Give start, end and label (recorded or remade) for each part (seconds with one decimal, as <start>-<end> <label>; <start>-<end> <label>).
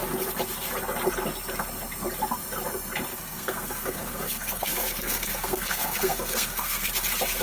0.0-3.1 recorded; 3.1-6.9 remade; 6.9-7.4 recorded